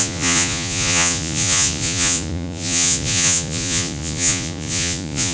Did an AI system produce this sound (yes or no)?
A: yes